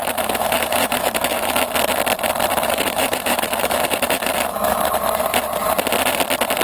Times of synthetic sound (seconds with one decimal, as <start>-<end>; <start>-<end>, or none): 0.0-1.6; 2.5-4.8